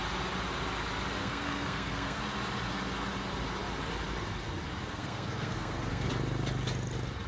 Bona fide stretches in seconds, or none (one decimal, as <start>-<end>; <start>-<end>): 0.0-1.2; 2.2-4.8; 6.1-7.3